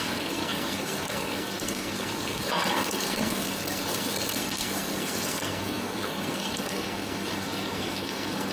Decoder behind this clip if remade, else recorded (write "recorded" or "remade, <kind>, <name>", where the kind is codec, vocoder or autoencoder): remade, codec, SNAC